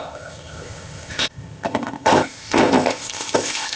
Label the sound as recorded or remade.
remade